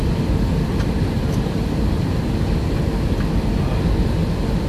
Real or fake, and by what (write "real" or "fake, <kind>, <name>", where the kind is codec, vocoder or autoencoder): real